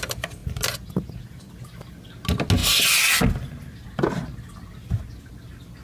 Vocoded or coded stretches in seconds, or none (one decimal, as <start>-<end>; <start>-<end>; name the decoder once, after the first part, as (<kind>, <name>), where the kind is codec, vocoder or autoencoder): none